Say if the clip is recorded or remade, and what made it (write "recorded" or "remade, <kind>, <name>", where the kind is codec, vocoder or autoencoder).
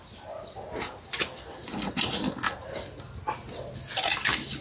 recorded